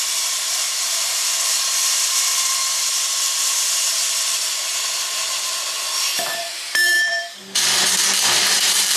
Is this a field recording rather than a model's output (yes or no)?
no